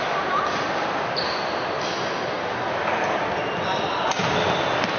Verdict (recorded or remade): recorded